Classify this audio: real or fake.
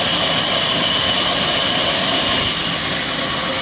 real